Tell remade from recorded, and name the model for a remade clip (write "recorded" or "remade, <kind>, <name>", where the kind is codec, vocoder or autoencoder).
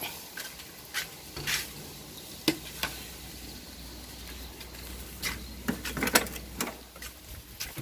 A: recorded